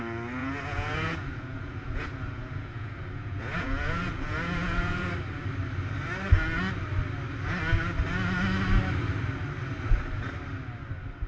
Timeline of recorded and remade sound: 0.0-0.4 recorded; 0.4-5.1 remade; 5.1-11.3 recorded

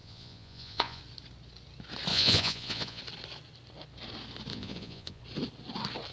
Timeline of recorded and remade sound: 0.0-1.0 remade; 1.0-2.1 recorded; 2.1-3.0 remade; 3.0-4.5 recorded; 4.5-5.2 remade; 5.2-6.1 recorded

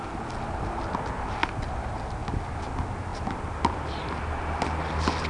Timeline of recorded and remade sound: 0.0-5.3 recorded

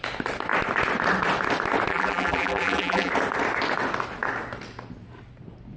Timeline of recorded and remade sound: 0.0-1.9 recorded; 1.9-3.1 remade; 3.1-5.8 recorded

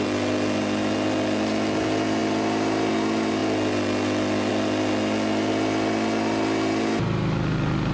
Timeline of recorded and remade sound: 0.0-7.9 recorded